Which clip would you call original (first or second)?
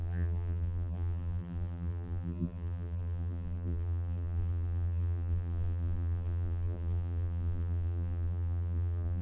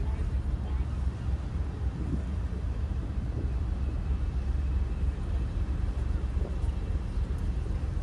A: second